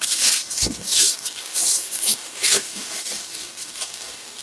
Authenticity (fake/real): fake